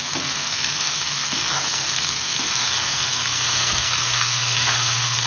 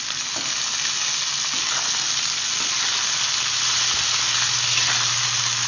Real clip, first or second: second